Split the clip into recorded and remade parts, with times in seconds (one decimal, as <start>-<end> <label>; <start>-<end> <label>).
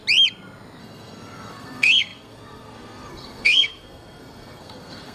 0.0-0.8 recorded; 0.8-5.1 remade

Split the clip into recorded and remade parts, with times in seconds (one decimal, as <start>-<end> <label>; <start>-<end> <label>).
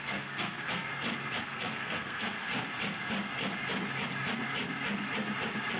0.0-0.9 remade; 0.9-1.4 recorded; 1.4-2.5 remade; 2.5-5.8 recorded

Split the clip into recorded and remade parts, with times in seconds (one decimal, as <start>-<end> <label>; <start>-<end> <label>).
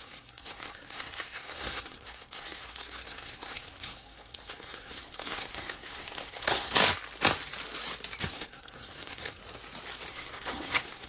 0.0-6.8 remade; 6.8-8.2 recorded; 8.2-9.4 remade; 9.4-10.1 recorded; 10.1-11.1 remade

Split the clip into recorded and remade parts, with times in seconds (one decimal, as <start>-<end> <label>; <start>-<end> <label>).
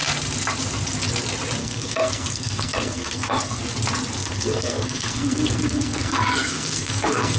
0.0-1.6 recorded; 1.6-3.6 remade; 3.6-4.2 recorded; 4.2-7.4 remade